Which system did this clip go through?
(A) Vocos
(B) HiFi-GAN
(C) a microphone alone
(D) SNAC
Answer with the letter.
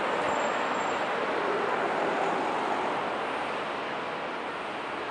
C